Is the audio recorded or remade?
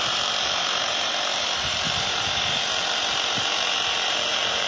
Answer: remade